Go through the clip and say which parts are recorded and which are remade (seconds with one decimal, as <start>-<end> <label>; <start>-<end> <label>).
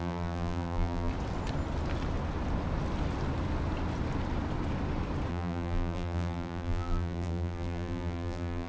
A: 0.0-1.1 remade; 1.1-5.3 recorded; 5.3-8.7 remade